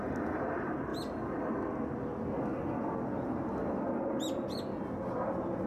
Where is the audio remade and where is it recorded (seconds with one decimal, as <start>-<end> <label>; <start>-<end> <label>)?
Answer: 0.0-0.9 recorded; 0.9-1.7 remade; 1.7-5.7 recorded

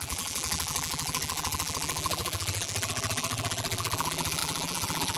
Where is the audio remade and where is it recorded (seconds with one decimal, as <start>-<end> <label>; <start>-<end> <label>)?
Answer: 0.0-5.2 remade

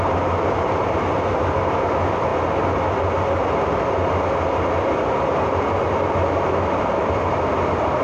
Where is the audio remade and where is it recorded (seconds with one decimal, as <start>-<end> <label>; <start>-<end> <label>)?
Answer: 0.0-2.3 remade; 2.3-7.1 recorded; 7.1-8.0 remade